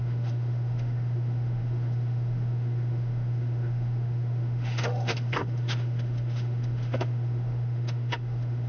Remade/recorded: remade